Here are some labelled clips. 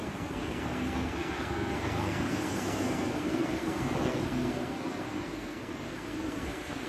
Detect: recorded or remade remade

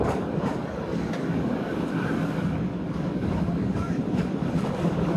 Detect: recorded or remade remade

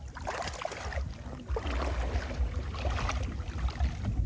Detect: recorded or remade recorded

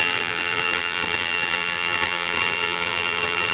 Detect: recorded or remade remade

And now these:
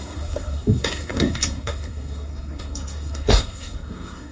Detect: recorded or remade remade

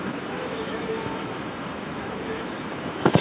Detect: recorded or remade remade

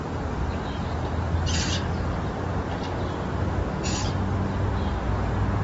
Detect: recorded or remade recorded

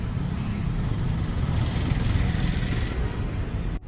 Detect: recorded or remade recorded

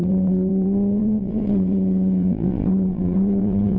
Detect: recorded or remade remade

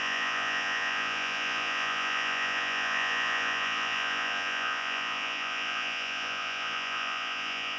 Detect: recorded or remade remade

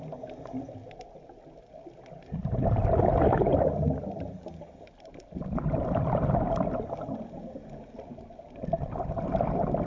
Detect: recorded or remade recorded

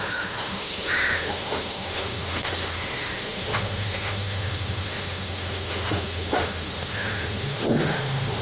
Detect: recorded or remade remade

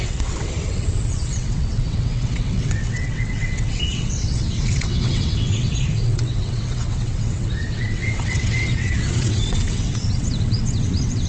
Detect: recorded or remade remade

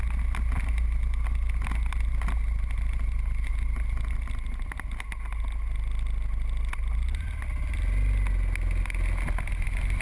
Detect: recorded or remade recorded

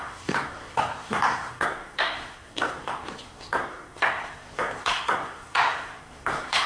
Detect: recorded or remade remade